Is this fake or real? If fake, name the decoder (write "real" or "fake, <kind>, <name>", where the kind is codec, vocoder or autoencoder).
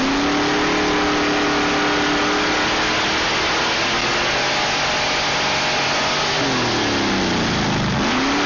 real